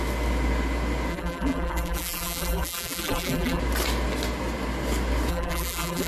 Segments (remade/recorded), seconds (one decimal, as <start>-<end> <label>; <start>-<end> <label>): 0.0-1.1 recorded; 1.1-3.6 remade; 3.6-5.3 recorded; 5.3-6.1 remade